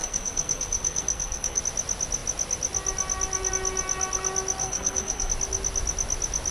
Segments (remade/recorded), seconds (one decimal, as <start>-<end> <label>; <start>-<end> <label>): 0.0-1.6 remade; 1.6-4.6 recorded; 4.6-5.3 remade; 5.3-6.5 recorded